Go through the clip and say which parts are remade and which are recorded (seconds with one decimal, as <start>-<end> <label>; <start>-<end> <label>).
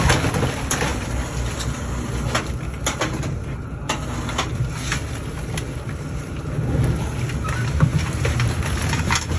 0.0-9.4 recorded